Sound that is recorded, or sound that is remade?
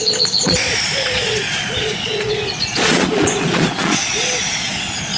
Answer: remade